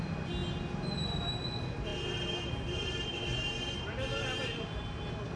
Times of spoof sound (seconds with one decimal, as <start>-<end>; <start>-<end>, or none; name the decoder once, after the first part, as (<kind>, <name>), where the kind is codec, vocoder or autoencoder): none